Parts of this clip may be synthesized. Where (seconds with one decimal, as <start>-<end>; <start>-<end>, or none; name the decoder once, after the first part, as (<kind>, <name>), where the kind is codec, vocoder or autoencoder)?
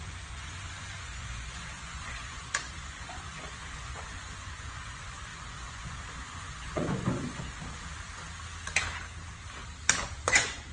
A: 0.0-7.6 (vocoder, Vocos); 10.0-10.7